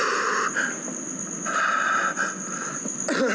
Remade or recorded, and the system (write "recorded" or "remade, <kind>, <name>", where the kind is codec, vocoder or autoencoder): recorded